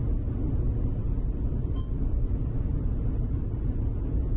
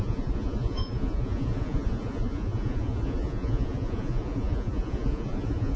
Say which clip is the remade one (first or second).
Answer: second